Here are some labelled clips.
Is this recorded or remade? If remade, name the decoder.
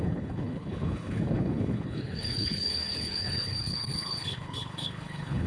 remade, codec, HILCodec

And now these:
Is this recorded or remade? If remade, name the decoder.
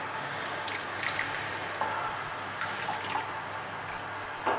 remade, vocoder, BigVGAN v2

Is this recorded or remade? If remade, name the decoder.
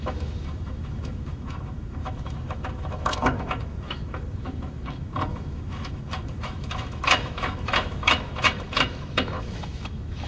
remade, autoencoder, DAC-VAE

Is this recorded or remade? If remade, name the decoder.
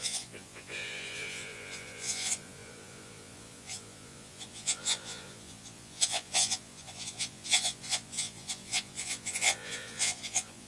remade, vocoder, Vocos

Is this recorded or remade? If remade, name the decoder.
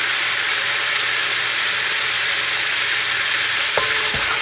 remade, vocoder, BigVGAN v2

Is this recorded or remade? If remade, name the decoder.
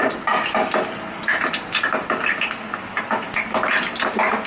recorded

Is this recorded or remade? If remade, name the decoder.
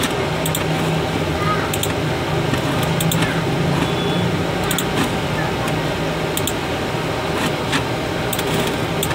recorded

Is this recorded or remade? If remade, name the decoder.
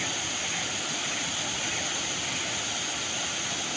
recorded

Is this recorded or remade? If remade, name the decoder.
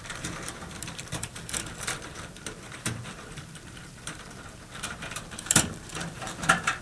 remade, vocoder, BigVGAN v2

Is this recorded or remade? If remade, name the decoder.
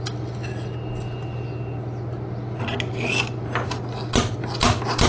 recorded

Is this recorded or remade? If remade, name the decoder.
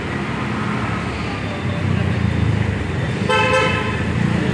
recorded